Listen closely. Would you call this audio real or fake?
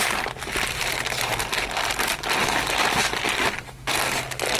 real